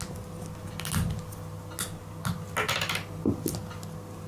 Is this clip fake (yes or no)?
no